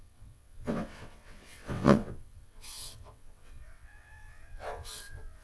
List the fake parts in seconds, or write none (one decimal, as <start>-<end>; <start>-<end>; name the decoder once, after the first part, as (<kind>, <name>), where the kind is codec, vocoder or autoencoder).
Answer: 0.0-5.4 (vocoder, WaveNeXt)